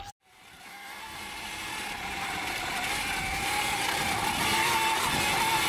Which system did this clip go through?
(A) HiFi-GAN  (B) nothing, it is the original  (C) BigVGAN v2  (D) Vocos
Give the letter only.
B